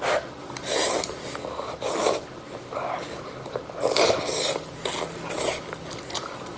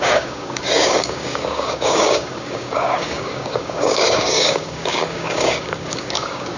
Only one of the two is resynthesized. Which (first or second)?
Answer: second